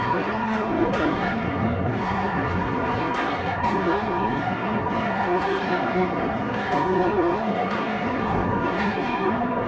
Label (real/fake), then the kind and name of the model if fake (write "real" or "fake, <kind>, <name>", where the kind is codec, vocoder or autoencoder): fake, codec, SNAC